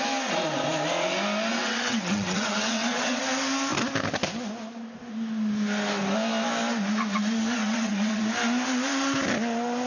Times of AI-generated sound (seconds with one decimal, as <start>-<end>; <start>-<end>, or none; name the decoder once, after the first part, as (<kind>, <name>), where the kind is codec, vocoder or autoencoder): 1.5-3.2 (vocoder, WaveNeXt); 7.6-8.2

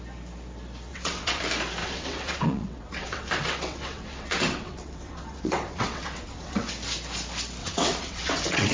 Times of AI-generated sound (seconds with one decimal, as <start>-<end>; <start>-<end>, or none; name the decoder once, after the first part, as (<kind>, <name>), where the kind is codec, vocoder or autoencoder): 0.9-1.4 (vocoder, WaveNeXt); 1.8-6.7; 7.6-8.7